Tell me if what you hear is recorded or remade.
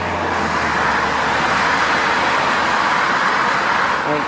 recorded